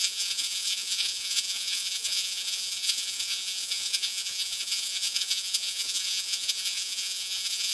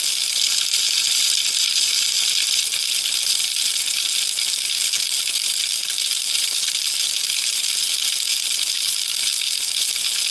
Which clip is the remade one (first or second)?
first